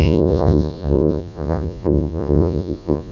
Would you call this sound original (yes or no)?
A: no